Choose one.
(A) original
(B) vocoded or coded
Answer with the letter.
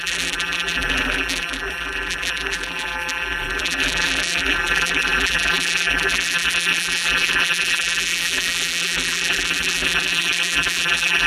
B